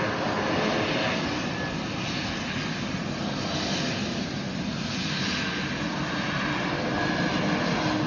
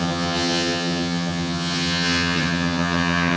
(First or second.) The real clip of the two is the first